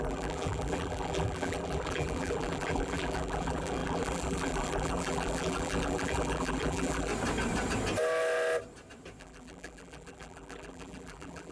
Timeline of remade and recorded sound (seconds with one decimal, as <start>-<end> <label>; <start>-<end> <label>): 0.0-7.1 remade; 7.1-9.2 recorded; 9.2-11.5 remade